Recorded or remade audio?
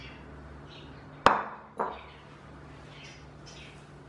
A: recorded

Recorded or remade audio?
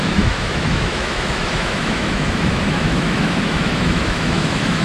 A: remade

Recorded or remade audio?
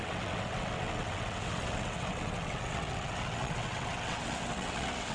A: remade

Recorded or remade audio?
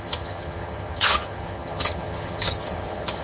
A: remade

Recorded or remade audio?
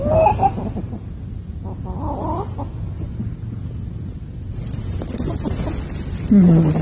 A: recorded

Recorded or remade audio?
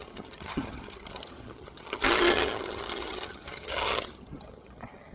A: remade